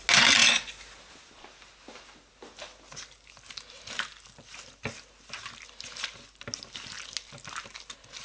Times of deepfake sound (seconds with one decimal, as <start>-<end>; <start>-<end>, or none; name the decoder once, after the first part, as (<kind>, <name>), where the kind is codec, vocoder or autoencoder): none